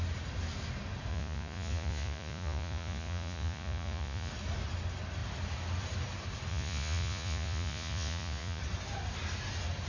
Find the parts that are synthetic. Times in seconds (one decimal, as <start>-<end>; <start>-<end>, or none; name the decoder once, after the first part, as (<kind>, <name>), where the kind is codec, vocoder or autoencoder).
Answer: 1.1-4.3 (vocoder, Vocos); 6.5-8.6